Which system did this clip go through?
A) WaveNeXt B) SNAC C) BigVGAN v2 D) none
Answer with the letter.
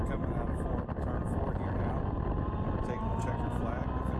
D